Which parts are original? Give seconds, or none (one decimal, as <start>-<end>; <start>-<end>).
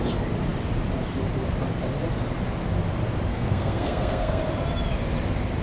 0.0-3.3; 4.4-5.6